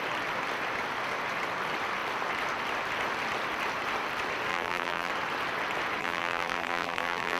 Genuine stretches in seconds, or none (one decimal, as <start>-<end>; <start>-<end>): 0.0-4.5; 5.1-6.0